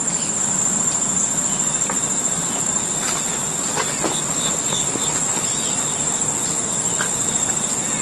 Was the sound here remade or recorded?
recorded